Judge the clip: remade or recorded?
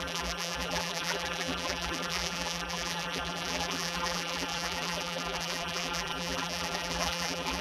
remade